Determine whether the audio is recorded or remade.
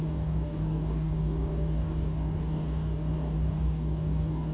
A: remade